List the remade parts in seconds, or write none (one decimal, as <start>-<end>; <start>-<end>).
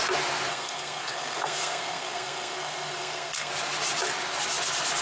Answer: 0.5-3.5